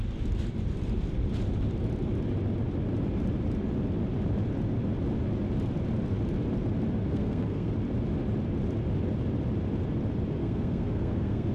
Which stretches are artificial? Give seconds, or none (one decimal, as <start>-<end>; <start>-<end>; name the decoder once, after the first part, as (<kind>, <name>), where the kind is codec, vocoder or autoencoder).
7.1-7.7 (codec, SNAC); 10.4-11.5